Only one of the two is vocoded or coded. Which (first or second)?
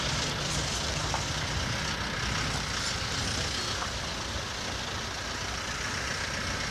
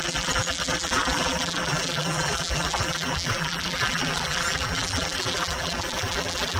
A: second